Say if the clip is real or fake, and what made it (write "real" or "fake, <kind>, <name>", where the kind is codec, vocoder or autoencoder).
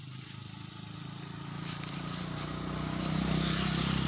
real